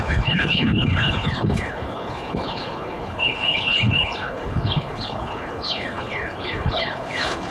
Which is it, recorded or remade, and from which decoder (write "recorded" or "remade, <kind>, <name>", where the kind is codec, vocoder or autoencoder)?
remade, codec, HILCodec